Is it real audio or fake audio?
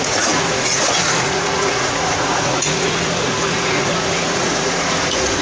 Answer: fake